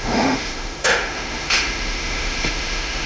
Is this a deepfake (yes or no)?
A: yes